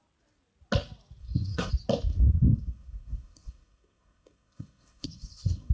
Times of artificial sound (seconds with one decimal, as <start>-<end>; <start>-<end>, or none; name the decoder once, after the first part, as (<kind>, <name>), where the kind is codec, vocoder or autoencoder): 1.2-1.7 (codec, SNAC); 2.1-5.7

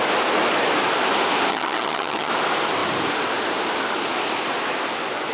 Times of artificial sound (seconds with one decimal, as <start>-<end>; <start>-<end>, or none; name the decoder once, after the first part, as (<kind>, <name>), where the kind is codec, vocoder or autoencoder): 1.5-2.3 (vocoder, HiFi-GAN)

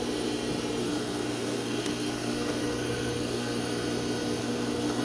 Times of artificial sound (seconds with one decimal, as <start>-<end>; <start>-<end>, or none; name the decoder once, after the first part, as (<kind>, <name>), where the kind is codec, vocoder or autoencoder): 0.8-3.6 (codec, SNAC); 4.4-5.0

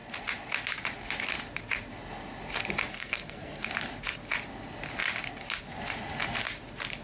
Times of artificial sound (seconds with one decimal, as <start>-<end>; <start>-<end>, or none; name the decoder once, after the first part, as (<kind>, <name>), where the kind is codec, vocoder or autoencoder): 2.9-3.7 (codec, SNAC)

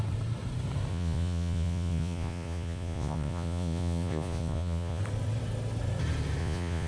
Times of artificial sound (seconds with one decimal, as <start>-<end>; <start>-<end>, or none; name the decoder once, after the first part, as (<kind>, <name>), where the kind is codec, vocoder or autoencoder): 0.9-5.0 (vocoder, Vocos); 6.4-6.9

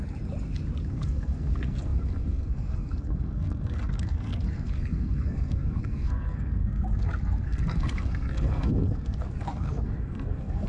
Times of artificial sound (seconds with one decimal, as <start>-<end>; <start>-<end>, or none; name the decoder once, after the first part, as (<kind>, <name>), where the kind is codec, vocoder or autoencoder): 0.9-10.7 (codec, SNAC)

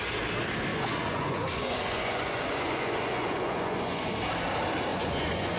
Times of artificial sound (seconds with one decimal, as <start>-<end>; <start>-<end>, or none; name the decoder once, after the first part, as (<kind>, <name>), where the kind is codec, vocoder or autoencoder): 0.7-4.1 (vocoder, Vocos); 4.9-5.6